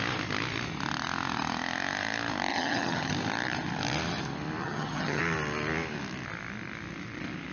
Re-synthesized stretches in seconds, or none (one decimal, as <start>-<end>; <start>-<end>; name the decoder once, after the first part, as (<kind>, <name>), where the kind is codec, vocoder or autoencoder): 2.5-3.1 (vocoder, HiFi-GAN); 4.6-5.2